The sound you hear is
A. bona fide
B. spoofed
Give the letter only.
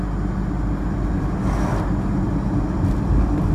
A